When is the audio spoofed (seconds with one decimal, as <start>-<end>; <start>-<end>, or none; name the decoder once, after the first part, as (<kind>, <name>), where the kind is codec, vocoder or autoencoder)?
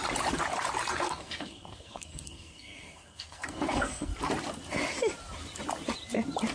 0.9-4.1 (codec, SNAC)